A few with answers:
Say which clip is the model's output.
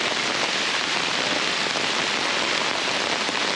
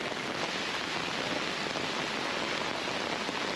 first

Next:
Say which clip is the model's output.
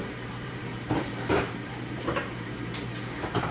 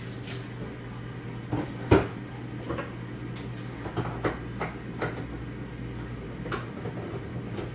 first